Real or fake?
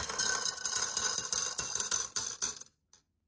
real